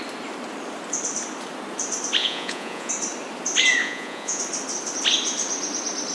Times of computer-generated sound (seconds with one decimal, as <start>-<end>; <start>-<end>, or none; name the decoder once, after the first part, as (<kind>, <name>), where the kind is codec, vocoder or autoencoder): 2.2-2.9 (vocoder, Vocos); 3.8-4.4